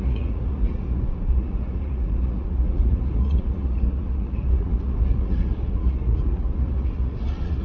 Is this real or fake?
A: fake